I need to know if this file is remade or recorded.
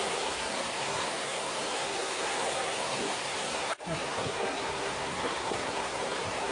remade